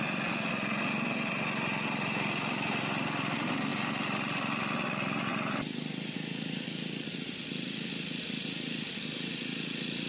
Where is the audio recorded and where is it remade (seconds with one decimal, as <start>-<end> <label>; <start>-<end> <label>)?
0.0-10.1 recorded

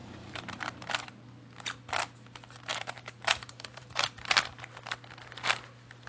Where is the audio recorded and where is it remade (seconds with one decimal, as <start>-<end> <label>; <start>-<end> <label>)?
0.0-0.9 remade; 0.9-2.7 recorded; 2.7-4.7 remade; 4.7-6.1 recorded

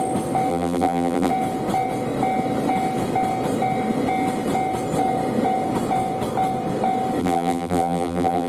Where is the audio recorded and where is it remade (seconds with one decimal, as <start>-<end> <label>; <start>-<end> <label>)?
0.0-0.5 recorded; 0.5-1.3 remade; 1.3-7.2 recorded; 7.2-8.5 remade

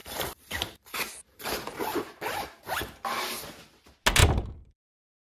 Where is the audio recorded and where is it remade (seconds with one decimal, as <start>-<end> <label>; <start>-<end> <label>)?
0.0-3.2 remade; 3.2-4.2 recorded; 4.2-5.3 remade

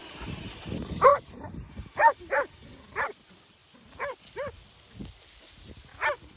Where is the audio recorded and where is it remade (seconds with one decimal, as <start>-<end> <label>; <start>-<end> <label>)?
0.0-6.4 recorded

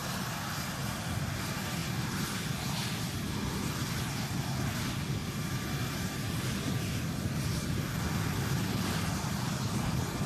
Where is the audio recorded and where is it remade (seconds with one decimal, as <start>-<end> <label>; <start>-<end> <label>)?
0.0-0.7 recorded; 0.7-1.8 remade; 1.8-3.0 recorded; 3.0-5.2 remade; 5.2-7.4 recorded; 7.4-10.3 remade

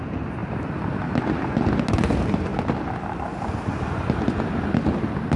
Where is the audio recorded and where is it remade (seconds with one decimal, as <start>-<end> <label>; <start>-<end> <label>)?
0.0-5.4 recorded

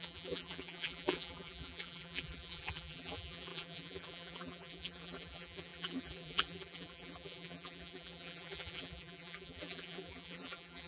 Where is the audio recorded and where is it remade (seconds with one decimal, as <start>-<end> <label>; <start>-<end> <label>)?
0.0-10.9 remade